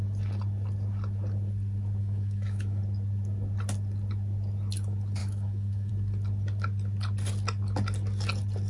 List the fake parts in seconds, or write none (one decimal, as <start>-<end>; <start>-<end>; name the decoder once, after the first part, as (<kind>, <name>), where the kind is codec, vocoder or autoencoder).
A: 2.0-2.8 (autoencoder, DAC-VAE); 5.2-5.9

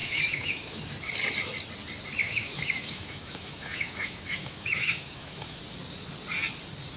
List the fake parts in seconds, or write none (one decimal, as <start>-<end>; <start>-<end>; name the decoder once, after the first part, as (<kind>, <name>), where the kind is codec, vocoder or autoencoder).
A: 0.0-0.8 (autoencoder, DAC-VAE); 2.2-5.6

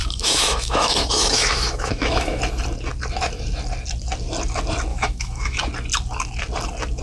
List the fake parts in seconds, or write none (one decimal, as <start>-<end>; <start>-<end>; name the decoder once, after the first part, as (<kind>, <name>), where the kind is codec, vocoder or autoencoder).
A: 0.0-2.4 (autoencoder, DAC-VAE); 4.9-5.6

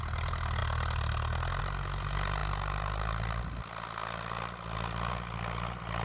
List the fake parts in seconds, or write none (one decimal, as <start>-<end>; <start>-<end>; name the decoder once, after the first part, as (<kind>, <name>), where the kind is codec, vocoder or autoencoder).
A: none

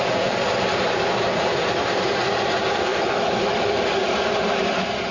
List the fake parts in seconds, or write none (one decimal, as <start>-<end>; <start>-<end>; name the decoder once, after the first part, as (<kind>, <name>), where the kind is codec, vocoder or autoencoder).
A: 2.9-3.7 (autoencoder, DAC-VAE)